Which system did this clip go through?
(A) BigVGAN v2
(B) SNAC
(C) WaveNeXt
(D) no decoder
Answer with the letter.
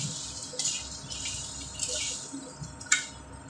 D